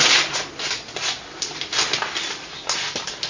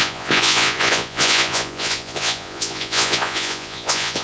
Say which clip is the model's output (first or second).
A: second